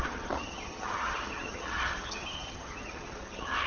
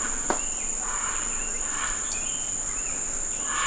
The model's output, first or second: first